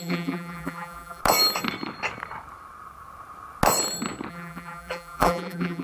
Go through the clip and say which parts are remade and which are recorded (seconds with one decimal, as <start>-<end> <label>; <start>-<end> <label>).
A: 0.0-1.2 remade; 1.2-4.3 recorded; 4.3-5.8 remade